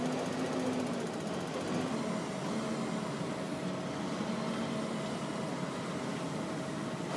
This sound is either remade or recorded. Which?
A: recorded